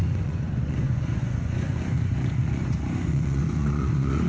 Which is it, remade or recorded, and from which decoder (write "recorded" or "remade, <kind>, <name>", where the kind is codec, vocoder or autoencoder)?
remade, vocoder, Vocos